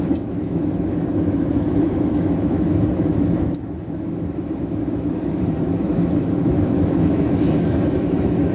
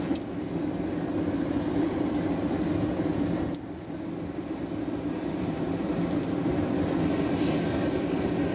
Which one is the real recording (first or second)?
second